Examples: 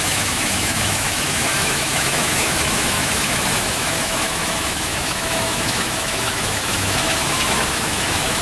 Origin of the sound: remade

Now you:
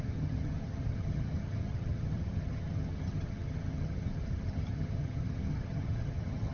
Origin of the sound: remade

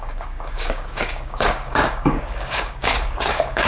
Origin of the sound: remade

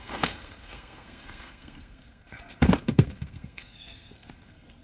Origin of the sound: remade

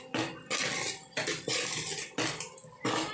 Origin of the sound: recorded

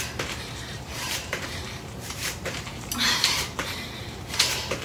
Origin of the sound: remade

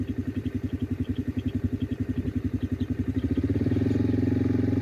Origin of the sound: recorded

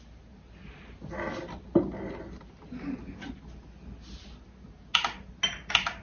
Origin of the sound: recorded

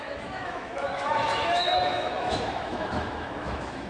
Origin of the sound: remade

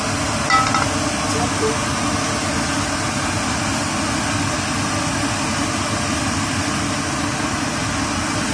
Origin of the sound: recorded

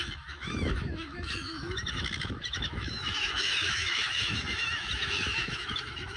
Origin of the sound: remade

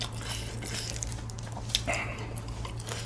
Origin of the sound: recorded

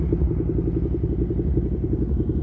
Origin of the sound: recorded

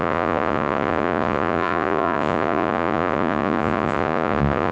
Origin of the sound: remade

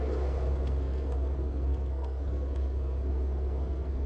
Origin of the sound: remade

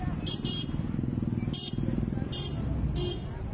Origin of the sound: recorded